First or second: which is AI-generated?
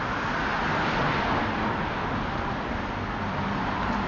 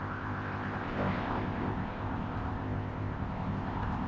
second